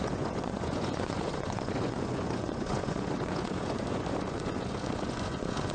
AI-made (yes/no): yes